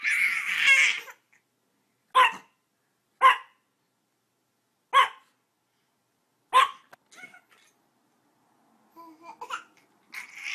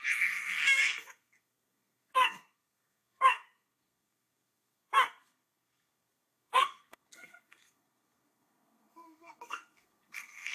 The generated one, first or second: second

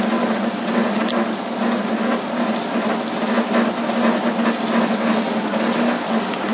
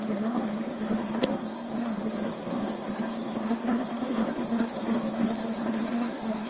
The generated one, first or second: second